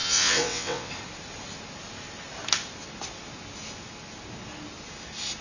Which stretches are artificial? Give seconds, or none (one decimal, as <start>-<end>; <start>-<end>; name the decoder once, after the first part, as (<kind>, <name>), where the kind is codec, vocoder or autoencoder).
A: 0.0-0.9 (vocoder, WaveNeXt)